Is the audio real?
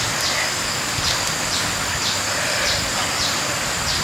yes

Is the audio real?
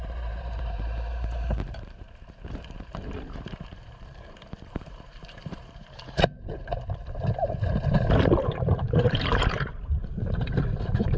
no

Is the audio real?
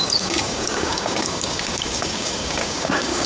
no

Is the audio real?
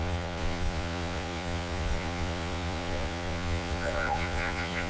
no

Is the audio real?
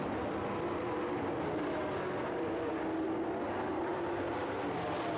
yes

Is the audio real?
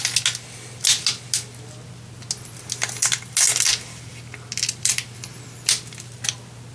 yes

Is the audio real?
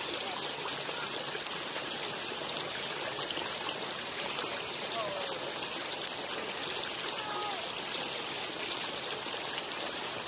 yes